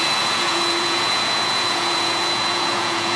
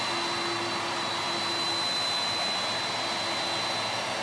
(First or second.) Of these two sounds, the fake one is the first